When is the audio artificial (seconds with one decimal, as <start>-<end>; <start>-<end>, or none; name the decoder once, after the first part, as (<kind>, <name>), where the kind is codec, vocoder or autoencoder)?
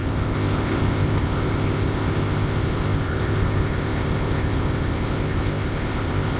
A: 0.0-6.4 (codec, ZipCodec)